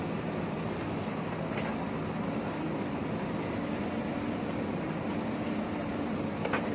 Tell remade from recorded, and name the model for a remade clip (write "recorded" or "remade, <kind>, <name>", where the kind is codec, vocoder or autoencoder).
recorded